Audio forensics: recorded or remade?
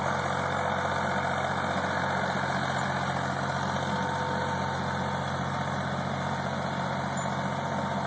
recorded